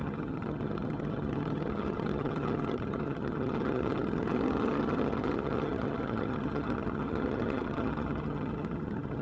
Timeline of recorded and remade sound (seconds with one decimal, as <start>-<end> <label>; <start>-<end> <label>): 0.0-9.2 remade